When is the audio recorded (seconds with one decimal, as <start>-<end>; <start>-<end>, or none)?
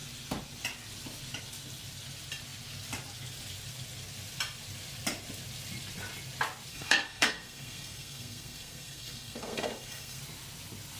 0.0-6.7; 10.2-11.0